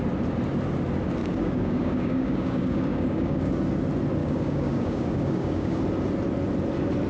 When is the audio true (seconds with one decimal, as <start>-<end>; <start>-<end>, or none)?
0.0-1.2; 3.5-4.2; 5.8-7.1